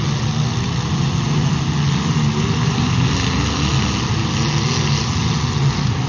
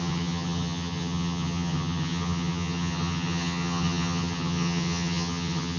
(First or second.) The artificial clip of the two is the second